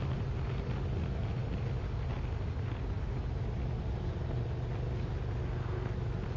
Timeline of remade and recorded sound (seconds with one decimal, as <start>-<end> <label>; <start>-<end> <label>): 0.0-6.4 recorded